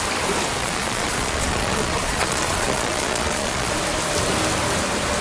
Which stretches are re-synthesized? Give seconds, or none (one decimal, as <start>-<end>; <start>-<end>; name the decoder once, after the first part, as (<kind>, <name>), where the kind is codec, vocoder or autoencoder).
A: 0.6-3.7 (vocoder, Vocos)